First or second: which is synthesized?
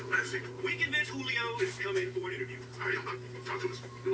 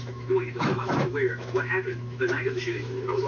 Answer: second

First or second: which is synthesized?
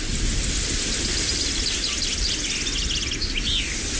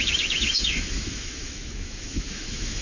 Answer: second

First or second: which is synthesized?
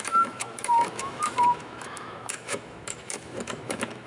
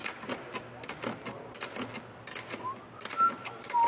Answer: first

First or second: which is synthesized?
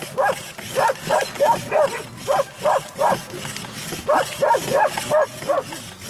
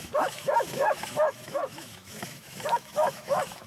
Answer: second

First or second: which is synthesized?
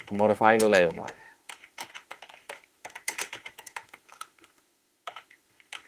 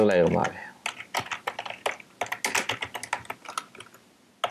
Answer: first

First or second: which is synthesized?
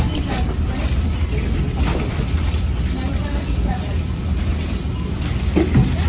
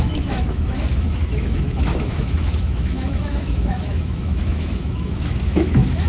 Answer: second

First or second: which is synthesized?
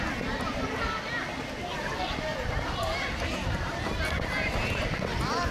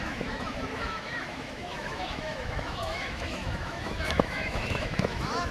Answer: second